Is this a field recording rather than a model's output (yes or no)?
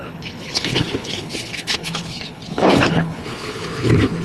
no